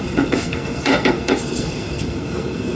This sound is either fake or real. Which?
fake